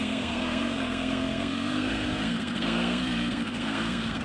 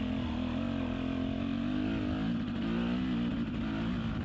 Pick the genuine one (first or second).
second